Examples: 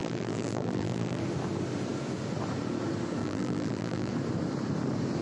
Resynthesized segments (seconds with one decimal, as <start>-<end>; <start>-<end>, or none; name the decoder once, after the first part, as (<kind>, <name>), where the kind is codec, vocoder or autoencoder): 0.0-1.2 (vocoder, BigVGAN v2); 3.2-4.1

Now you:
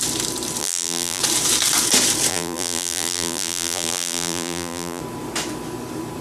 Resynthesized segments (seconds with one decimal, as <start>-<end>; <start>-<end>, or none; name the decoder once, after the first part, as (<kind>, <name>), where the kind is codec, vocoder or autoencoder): 0.6-1.2 (vocoder, BigVGAN v2); 2.3-5.0

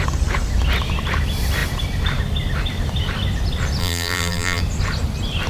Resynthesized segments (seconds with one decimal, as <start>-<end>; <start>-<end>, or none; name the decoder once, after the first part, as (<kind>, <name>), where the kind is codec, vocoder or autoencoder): 3.8-4.6 (vocoder, BigVGAN v2)

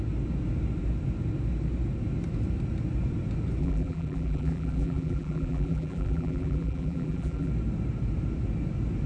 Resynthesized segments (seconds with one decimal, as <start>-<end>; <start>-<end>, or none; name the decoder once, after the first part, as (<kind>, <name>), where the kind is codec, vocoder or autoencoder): 3.6-7.5 (vocoder, BigVGAN v2)